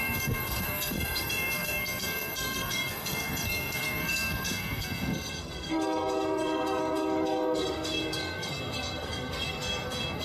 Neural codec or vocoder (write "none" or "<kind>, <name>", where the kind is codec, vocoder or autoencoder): codec, SNAC